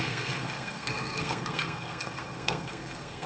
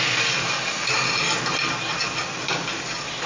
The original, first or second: second